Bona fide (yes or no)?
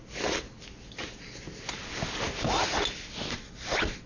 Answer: yes